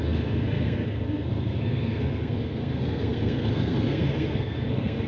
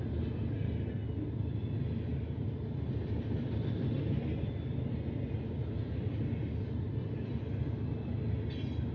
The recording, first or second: second